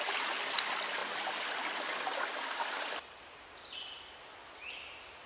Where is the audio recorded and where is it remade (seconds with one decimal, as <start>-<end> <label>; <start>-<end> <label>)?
0.0-5.3 recorded